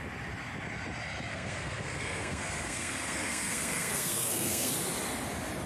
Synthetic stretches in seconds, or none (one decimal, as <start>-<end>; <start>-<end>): 1.3-4.7